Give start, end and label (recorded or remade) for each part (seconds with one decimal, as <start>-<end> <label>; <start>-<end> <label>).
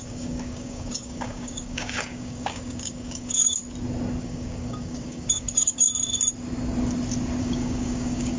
0.0-3.6 remade; 3.6-4.2 recorded; 4.2-5.9 remade; 5.9-7.4 recorded; 7.4-8.4 remade